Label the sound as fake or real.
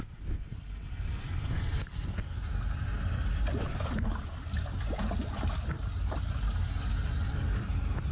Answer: real